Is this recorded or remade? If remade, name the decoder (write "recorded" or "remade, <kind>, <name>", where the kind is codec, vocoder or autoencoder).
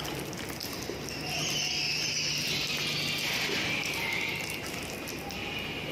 recorded